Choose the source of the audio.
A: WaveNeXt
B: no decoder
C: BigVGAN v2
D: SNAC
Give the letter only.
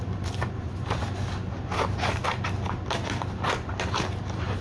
B